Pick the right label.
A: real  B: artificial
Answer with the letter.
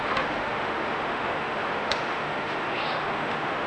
B